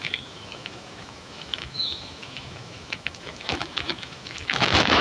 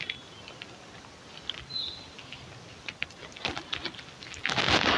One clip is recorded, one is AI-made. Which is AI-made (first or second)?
first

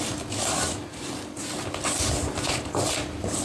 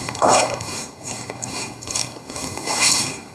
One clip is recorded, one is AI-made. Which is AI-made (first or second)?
second